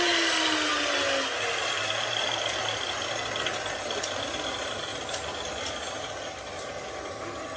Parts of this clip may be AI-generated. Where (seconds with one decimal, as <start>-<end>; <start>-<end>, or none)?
none